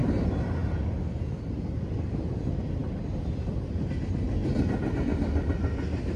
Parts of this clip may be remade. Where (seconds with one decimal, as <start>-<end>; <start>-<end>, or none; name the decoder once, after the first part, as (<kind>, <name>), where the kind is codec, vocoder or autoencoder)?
none